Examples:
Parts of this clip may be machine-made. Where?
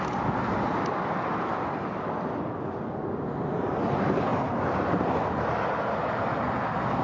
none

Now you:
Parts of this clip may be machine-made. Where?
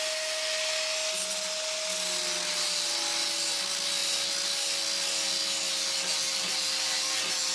none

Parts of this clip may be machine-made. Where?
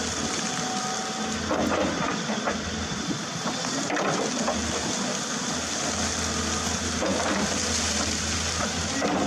none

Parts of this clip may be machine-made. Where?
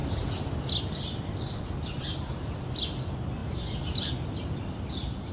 none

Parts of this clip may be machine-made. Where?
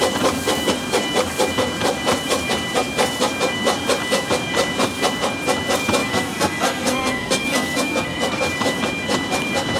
6.0-8.4 (codec, SNAC)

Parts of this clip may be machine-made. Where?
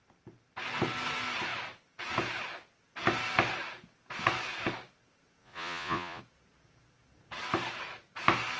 5.4-6.2 (vocoder, Vocos)